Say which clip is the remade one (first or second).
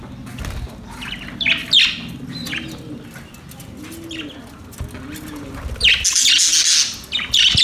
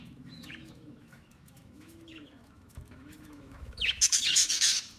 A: second